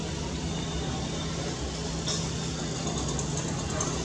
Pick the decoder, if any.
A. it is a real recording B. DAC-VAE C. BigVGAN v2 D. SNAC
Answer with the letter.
A